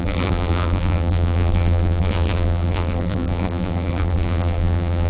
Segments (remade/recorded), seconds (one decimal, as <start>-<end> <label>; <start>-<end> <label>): 0.0-5.1 remade